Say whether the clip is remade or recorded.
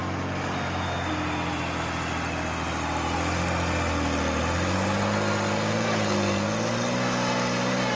recorded